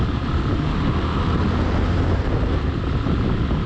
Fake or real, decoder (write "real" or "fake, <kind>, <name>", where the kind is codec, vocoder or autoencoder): real